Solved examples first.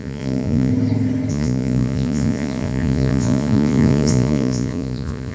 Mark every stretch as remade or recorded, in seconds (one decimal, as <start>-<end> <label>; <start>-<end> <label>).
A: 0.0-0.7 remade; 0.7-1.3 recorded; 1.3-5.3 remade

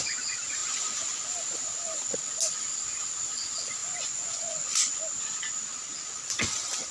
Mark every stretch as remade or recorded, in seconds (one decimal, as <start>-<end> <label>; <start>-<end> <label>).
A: 0.0-3.8 recorded; 3.8-5.1 remade; 5.1-6.9 recorded

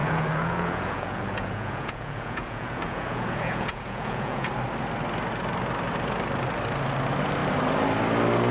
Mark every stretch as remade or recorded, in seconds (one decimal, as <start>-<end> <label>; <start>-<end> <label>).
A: 0.0-4.5 remade; 4.5-8.5 recorded

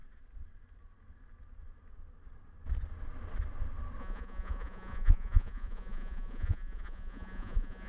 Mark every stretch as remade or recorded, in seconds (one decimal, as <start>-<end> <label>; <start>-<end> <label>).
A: 0.0-4.0 recorded; 4.0-7.9 remade

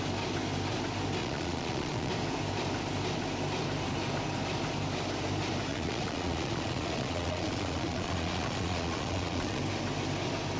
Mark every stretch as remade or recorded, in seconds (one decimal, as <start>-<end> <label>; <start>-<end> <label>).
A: 0.0-1.2 recorded; 1.2-2.1 remade; 2.1-5.7 recorded; 5.7-9.6 remade; 9.6-10.6 recorded

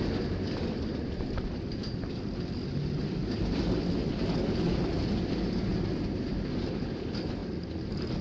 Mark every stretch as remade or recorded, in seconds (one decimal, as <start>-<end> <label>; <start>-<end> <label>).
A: 0.0-8.2 recorded